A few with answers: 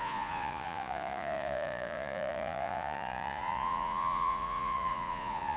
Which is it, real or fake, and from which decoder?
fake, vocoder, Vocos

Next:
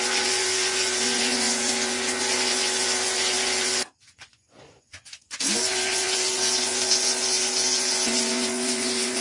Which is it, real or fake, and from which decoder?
fake, vocoder, Vocos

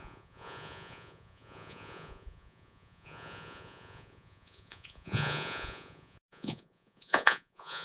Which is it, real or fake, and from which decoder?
fake, vocoder, Vocos